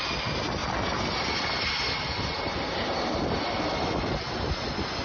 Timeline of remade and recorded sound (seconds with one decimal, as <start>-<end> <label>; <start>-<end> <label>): 0.0-5.0 recorded